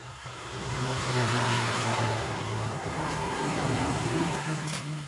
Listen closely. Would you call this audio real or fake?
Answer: fake